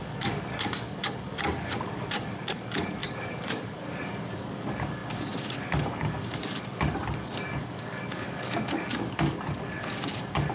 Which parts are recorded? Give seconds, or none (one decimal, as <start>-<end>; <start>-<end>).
none